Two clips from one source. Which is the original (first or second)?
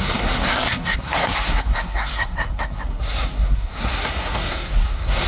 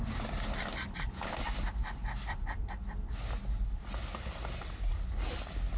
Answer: second